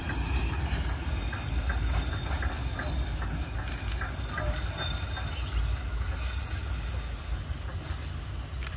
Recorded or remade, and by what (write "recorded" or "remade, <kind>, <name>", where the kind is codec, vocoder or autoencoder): recorded